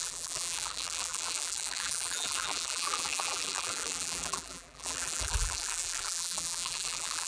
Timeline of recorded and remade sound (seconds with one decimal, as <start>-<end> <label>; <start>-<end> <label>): 0.0-7.3 remade